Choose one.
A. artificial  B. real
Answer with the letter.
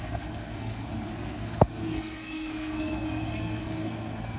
A